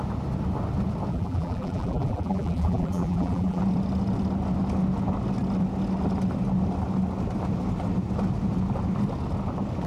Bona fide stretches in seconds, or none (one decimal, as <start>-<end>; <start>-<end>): 0.0-1.1; 3.6-9.9